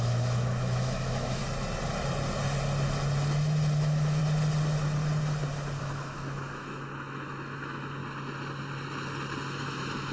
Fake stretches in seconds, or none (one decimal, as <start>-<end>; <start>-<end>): 0.0-1.4; 3.8-4.2; 5.8-8.0; 9.5-10.1

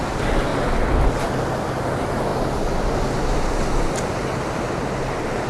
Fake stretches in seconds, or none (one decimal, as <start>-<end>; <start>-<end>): none

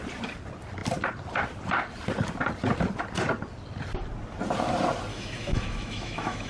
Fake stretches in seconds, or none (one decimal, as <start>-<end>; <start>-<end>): 5.1-6.5

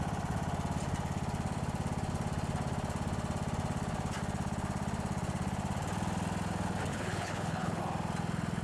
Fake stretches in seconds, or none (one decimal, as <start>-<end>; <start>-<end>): 6.9-7.8

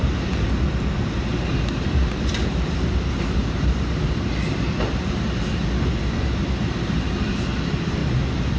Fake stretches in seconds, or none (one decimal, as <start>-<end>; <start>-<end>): 1.3-4.6; 8.0-8.6

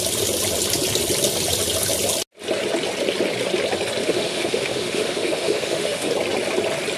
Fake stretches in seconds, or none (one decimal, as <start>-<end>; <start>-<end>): 4.0-6.1

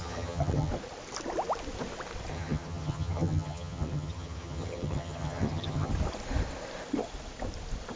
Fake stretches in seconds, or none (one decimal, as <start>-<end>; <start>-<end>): 0.0-0.7; 2.3-5.9

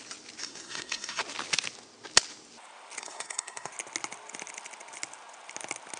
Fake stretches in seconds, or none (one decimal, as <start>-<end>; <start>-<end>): 0.4-1.2; 3.0-3.7